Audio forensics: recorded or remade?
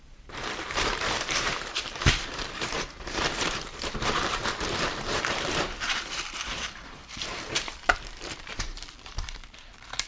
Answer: remade